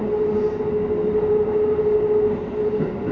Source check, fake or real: real